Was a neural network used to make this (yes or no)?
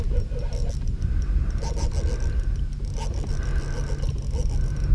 no